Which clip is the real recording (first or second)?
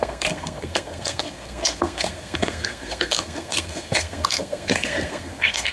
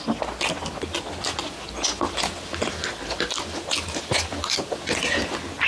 second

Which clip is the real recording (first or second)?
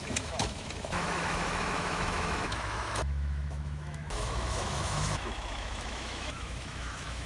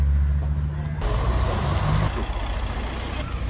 second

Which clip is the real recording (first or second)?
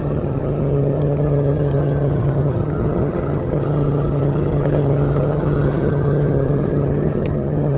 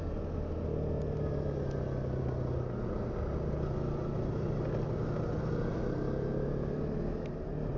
second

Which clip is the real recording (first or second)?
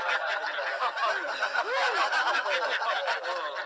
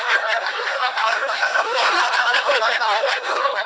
first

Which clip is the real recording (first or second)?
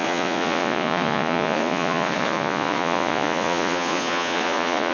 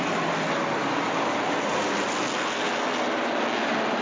second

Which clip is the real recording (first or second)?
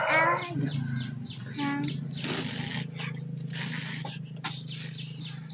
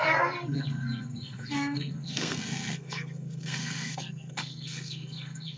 first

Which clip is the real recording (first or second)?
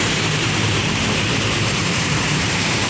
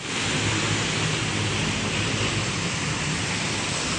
second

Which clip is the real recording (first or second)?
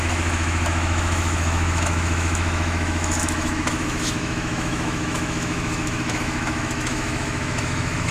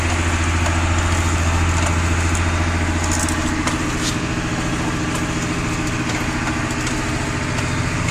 second